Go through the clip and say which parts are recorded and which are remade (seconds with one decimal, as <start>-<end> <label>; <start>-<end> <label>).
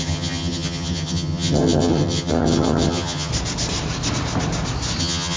0.0-3.3 remade; 3.3-5.0 recorded; 5.0-5.4 remade